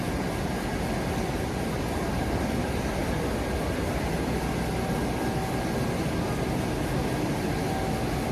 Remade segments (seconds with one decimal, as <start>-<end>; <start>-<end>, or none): none